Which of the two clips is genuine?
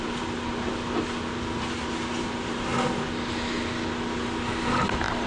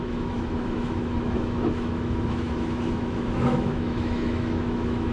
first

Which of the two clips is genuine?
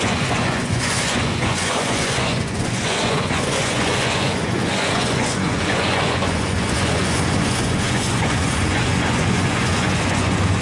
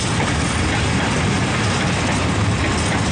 second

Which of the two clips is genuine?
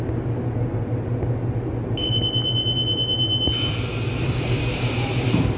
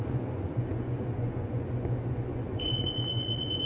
first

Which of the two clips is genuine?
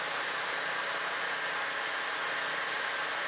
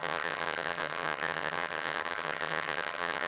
first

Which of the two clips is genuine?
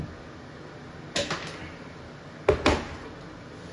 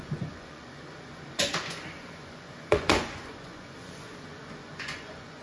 first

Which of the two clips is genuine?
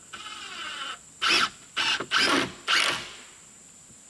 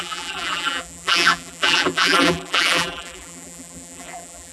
first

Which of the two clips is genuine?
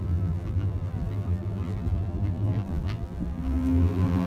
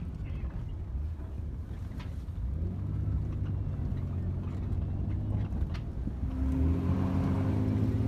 second